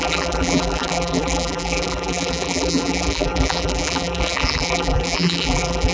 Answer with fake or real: fake